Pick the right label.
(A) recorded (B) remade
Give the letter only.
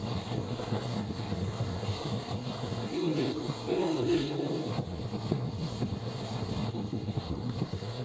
B